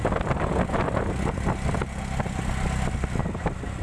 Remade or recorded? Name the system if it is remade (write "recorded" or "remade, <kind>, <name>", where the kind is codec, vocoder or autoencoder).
recorded